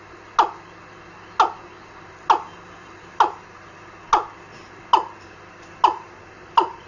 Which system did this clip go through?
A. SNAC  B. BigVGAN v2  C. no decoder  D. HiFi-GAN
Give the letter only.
C